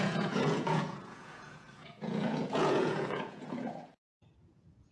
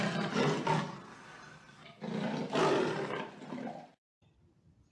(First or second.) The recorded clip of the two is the second